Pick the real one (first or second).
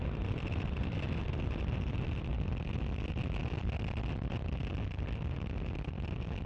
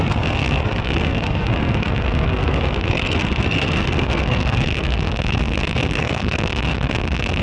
first